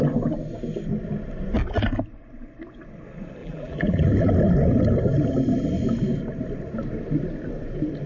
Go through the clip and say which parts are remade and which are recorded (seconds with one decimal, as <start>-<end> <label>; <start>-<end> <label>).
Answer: 0.0-3.4 recorded; 3.4-4.3 remade; 4.3-8.1 recorded